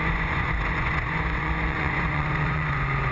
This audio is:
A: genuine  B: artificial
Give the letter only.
B